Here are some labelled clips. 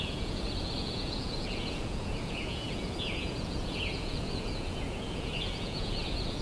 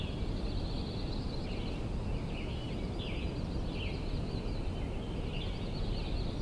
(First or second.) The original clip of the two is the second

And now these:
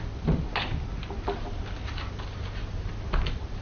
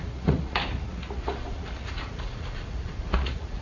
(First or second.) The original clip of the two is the first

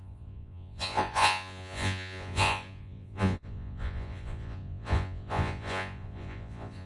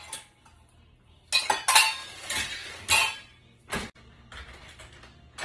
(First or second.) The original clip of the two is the second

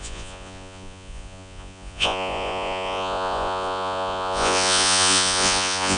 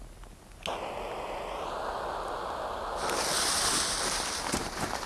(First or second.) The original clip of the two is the second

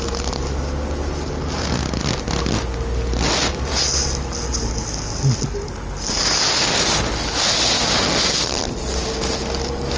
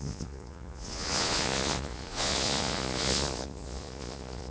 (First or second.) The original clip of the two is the first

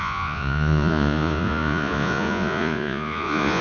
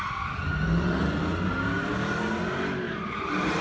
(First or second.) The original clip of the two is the second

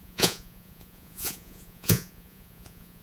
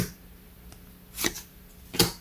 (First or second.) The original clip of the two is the second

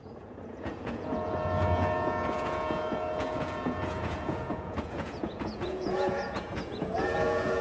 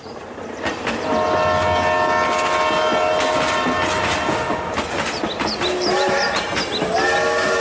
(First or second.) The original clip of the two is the second